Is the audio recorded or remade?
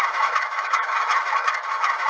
remade